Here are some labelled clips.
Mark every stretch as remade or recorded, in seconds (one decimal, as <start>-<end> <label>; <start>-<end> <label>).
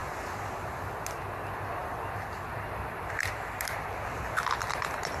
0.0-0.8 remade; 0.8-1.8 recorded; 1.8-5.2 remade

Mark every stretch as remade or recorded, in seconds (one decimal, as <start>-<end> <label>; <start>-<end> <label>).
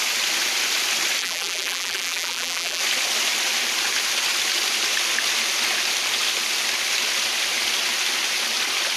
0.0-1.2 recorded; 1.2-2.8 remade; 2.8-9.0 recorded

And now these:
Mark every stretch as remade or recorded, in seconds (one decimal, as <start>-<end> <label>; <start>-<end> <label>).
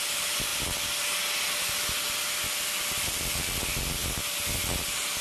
0.0-0.5 remade; 0.5-3.6 recorded; 3.6-4.0 remade; 4.0-5.2 recorded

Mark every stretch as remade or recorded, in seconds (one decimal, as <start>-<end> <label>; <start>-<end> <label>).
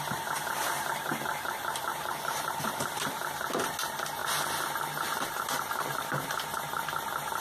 0.0-1.9 recorded; 1.9-2.8 remade; 2.8-7.4 recorded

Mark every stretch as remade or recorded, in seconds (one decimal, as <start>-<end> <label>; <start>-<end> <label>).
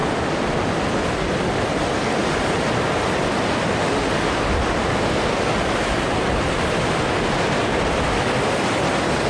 0.0-2.2 remade; 2.2-6.4 recorded; 6.4-9.3 remade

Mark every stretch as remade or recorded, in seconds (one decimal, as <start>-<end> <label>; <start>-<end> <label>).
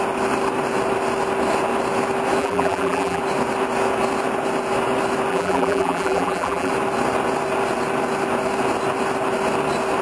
0.0-2.4 recorded; 2.4-3.2 remade; 3.2-5.3 recorded; 5.3-6.7 remade; 6.7-10.0 recorded